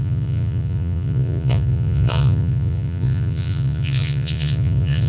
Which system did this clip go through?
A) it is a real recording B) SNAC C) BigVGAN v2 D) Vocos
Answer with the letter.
D